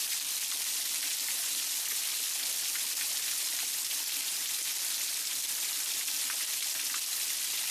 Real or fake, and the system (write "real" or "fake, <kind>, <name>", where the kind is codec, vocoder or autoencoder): real